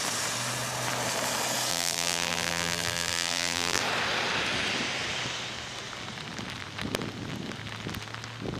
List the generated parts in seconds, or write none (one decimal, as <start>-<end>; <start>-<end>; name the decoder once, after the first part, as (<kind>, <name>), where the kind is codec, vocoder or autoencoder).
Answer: 1.7-3.8 (vocoder, BigVGAN v2)